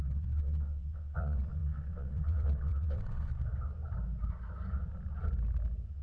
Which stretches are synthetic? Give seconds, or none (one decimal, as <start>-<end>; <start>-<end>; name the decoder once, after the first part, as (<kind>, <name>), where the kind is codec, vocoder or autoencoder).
0.0-3.3 (vocoder, WaveNeXt)